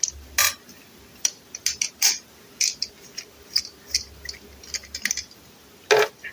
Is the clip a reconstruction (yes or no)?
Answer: no